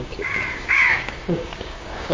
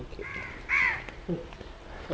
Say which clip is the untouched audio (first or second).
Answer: second